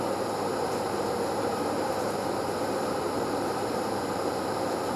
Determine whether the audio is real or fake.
fake